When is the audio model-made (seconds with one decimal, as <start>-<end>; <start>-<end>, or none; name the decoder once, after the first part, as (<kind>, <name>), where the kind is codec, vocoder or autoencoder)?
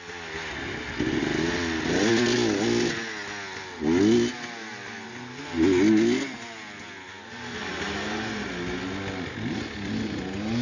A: 7.7-8.5 (vocoder, BigVGAN v2)